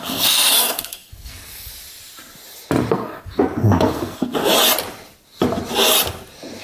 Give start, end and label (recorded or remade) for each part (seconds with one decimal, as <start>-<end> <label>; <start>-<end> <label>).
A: 0.0-1.7 remade; 1.7-2.9 recorded; 2.9-4.4 remade; 4.4-6.6 recorded